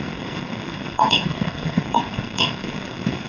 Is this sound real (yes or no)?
no